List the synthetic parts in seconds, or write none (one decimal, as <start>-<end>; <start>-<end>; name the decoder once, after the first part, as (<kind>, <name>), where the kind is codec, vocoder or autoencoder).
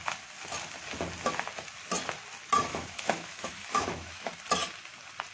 2.7-4.3 (autoencoder, DAC-VAE)